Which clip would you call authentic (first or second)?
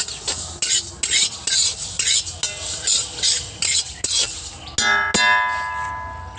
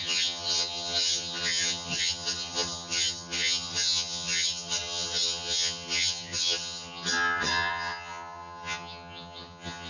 first